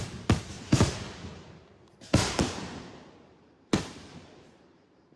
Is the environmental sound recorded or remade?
remade